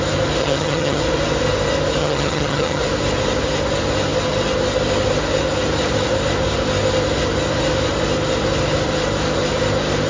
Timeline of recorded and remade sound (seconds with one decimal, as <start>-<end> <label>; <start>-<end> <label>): 0.0-0.4 recorded; 0.4-1.0 remade; 1.0-2.0 recorded; 2.0-2.8 remade; 2.8-10.1 recorded